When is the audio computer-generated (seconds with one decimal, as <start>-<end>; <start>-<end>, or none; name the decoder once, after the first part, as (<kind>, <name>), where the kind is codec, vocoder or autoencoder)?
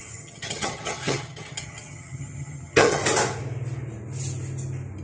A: 0.0-3.0 (vocoder, HiFi-GAN)